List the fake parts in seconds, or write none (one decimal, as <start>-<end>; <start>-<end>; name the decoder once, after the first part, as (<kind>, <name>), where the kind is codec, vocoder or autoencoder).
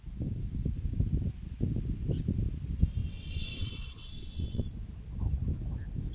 3.0-4.7 (vocoder, WaveNeXt)